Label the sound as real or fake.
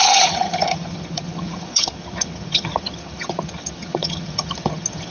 fake